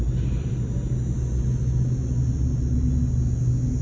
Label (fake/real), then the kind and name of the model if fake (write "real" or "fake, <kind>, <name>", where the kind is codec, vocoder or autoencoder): real